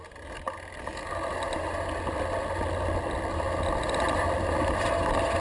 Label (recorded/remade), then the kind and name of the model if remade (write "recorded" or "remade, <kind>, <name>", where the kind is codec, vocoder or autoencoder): recorded